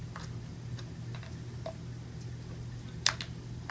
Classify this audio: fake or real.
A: real